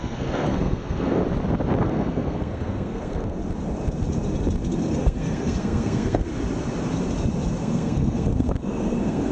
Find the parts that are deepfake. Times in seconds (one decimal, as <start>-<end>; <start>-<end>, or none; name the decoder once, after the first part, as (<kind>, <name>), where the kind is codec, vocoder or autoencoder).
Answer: 0.0-1.2 (codec, SNAC); 1.8-3.4; 5.0-6.3; 7.6-9.3